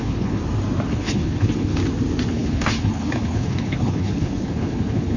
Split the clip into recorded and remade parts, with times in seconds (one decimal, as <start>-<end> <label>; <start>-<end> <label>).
0.0-0.4 remade; 0.4-0.9 recorded; 0.9-1.8 remade; 1.8-2.3 recorded; 2.3-5.2 remade